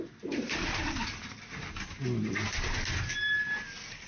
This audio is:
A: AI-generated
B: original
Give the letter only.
B